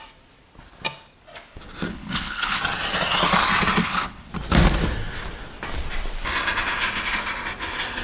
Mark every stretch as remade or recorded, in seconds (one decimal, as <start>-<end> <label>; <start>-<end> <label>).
0.0-1.9 recorded; 1.9-2.6 remade; 2.6-3.8 recorded; 3.8-4.3 remade; 4.3-8.0 recorded